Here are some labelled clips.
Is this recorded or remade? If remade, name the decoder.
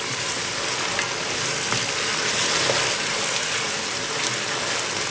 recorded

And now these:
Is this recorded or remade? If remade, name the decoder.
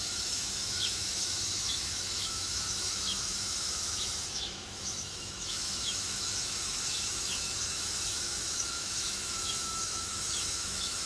remade, autoencoder, DAC-VAE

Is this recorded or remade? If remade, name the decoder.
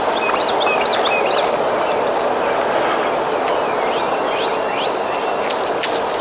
recorded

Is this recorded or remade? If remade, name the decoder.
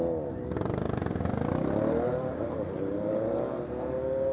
recorded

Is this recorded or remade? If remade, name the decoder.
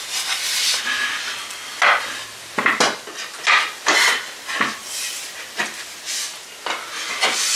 recorded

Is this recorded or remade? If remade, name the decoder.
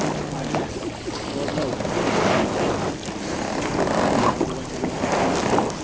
recorded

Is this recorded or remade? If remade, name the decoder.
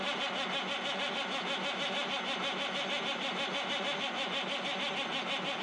recorded